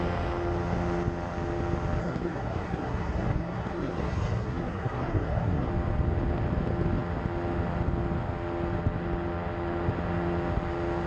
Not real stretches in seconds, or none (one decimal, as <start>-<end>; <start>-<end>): 2.0-5.7